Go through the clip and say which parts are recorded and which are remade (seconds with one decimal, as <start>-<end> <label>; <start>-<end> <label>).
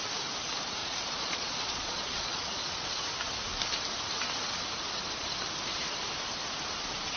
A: 0.0-0.8 recorded; 0.8-2.9 remade; 2.9-7.2 recorded